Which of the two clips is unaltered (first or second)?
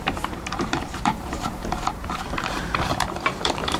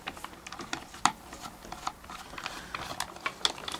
second